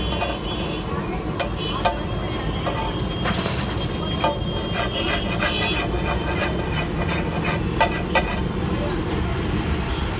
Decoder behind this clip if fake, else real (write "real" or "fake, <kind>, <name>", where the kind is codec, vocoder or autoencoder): real